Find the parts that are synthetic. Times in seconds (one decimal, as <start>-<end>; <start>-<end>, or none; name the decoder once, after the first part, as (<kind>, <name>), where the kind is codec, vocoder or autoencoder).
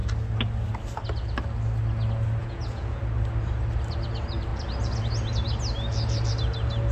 2.4-3.0 (vocoder, Vocos)